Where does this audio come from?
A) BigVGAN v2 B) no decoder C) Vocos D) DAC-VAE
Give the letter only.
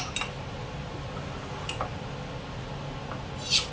B